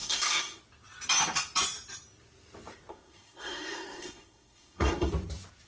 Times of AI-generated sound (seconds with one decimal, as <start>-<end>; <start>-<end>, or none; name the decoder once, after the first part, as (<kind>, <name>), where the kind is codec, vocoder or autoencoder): 0.0-0.6 (codec, SNAC); 2.9-5.1